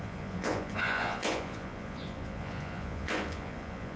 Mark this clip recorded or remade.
remade